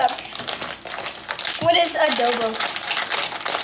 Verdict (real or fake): real